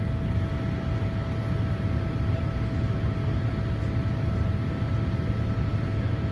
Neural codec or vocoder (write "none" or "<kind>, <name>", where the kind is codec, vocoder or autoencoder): none